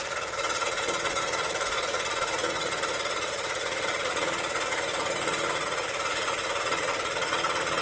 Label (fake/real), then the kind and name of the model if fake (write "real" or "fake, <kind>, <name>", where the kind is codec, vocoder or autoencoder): fake, vocoder, Vocos